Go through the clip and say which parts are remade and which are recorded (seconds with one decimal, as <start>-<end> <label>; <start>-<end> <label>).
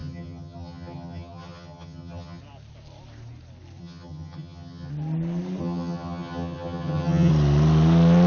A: 0.0-2.4 remade; 2.4-3.8 recorded; 3.8-4.9 remade; 4.9-5.6 recorded; 5.6-7.3 remade; 7.3-8.3 recorded